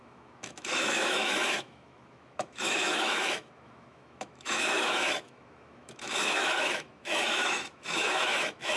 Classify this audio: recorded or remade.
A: remade